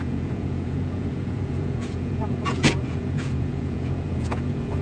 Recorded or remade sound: remade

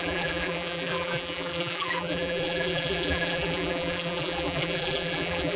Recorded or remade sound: remade